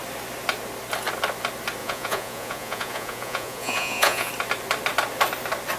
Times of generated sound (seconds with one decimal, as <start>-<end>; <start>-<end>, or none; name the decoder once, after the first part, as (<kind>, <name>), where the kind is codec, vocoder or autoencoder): 1.8-4.3 (vocoder, Vocos)